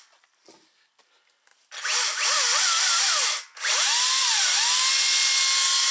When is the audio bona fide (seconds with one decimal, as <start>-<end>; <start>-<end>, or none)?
0.0-5.9